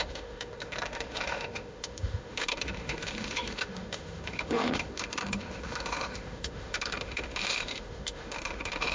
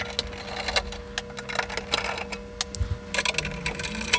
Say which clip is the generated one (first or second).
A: first